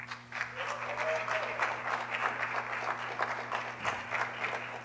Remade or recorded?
recorded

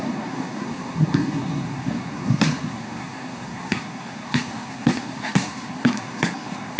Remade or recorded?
remade